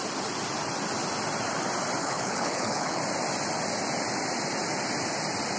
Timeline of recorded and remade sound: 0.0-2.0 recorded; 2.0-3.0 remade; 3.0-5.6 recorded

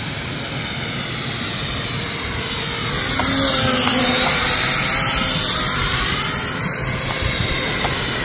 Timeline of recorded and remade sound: 0.0-8.2 recorded

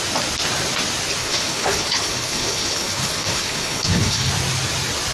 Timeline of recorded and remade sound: 0.0-1.2 recorded; 1.2-4.3 remade; 4.3-5.1 recorded

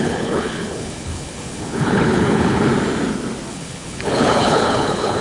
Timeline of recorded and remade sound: 0.0-2.7 remade; 2.7-3.5 recorded; 3.5-5.2 remade

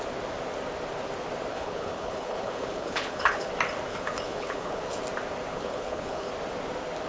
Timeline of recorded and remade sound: 0.0-1.5 recorded; 1.5-3.5 remade; 3.5-3.9 recorded; 3.9-5.0 remade; 5.0-5.5 recorded; 5.5-6.3 remade; 6.3-7.1 recorded

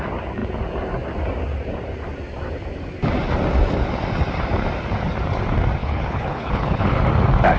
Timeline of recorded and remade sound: 0.0-5.8 recorded; 5.8-7.0 remade; 7.0-7.6 recorded

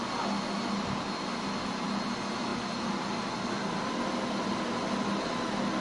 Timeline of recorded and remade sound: 0.0-5.8 recorded